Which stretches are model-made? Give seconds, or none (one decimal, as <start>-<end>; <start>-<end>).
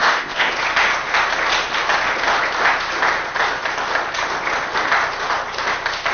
0.0-0.5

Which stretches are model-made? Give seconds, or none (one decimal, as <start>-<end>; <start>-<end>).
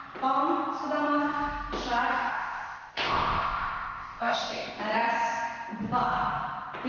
2.3-4.8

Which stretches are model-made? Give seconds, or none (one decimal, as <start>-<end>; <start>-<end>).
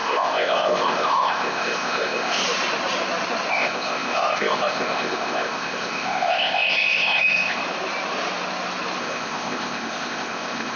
0.0-2.4; 3.5-7.6; 9.0-10.8